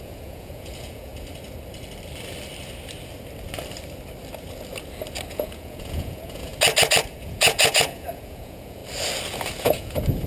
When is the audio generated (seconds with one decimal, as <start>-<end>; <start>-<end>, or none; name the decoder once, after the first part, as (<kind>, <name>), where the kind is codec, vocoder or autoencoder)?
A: 0.0-1.1 (vocoder, Vocos); 5.3-6.5; 7.2-8.8; 9.6-10.3